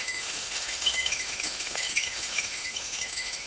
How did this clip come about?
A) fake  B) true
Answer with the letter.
A